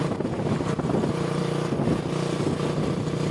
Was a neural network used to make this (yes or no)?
no